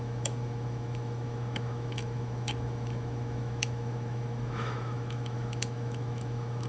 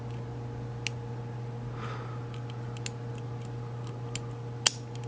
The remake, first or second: first